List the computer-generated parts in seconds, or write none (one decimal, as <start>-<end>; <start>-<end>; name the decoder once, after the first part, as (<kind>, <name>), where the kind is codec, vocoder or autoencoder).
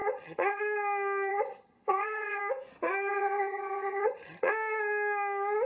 0.0-0.6 (vocoder, HiFi-GAN); 1.3-2.4; 3.1-4.5